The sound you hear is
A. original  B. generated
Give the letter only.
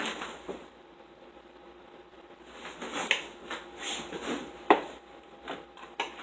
A